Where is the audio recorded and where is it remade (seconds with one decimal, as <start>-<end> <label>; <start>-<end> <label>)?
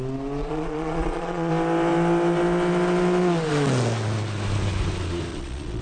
0.0-0.4 recorded; 0.4-1.5 remade; 1.5-5.3 recorded; 5.3-5.8 remade